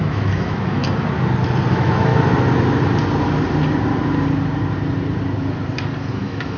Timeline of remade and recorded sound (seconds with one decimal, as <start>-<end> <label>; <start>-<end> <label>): 0.0-0.8 remade; 0.8-1.7 recorded; 1.7-2.1 remade; 2.1-6.1 recorded; 6.1-6.6 remade